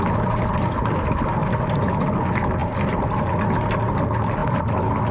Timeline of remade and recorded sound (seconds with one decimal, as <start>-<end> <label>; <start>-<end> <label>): 0.0-5.1 recorded